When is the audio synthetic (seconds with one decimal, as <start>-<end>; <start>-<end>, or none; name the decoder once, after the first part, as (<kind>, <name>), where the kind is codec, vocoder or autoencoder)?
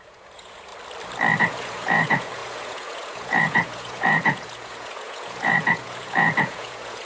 0.0-0.7 (vocoder, Vocos); 1.4-7.1